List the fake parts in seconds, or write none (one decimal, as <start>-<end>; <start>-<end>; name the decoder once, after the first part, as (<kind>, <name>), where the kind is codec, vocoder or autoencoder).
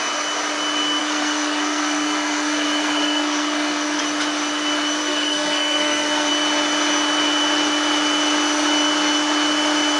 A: 1.0-4.0 (codec, SNAC); 5.0-6.3